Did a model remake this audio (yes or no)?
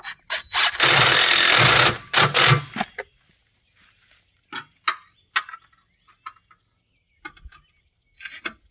no